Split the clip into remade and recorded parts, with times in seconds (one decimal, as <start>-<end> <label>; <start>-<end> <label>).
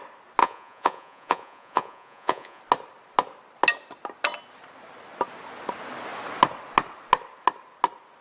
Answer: 0.0-0.4 recorded; 0.4-2.6 remade; 2.6-8.2 recorded